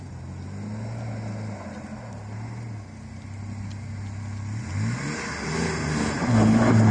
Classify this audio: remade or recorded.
recorded